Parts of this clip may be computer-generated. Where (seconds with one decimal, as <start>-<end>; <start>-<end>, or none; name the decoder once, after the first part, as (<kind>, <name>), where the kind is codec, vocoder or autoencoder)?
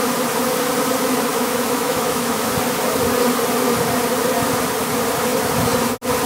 1.3-2.5 (autoencoder, DAC-VAE)